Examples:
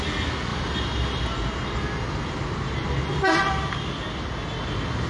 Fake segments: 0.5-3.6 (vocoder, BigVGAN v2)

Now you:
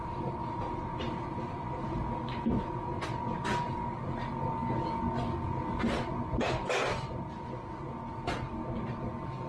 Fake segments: none

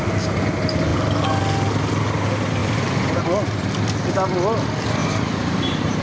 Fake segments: 2.6-3.2 (vocoder, BigVGAN v2); 5.0-6.0

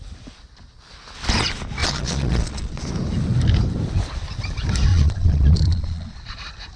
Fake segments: 1.8-2.8 (vocoder, Vocos); 4.9-6.2

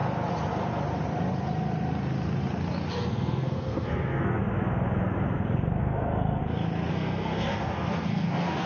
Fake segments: 2.9-4.4 (codec, SNAC); 5.8-6.4; 6.9-8.7

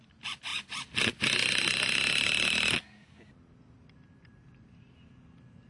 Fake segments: none

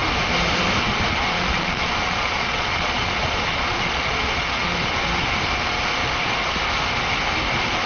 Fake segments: 1.2-4.6 (vocoder, Vocos)